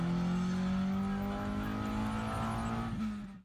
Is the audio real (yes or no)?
yes